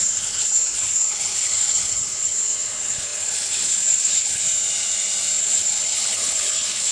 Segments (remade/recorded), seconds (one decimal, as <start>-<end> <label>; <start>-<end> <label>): 0.0-4.4 remade; 4.4-5.4 recorded; 5.4-6.9 remade